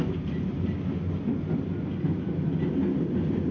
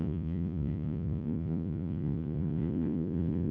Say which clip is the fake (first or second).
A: second